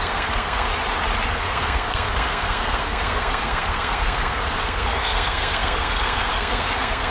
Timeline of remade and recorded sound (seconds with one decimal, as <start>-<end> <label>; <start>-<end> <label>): 0.0-0.7 remade; 0.7-1.3 recorded; 1.3-7.1 remade